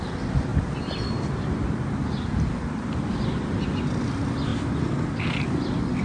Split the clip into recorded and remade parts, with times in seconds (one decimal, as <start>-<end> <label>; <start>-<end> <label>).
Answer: 0.0-6.0 recorded